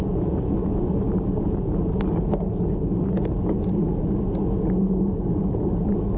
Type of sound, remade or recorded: recorded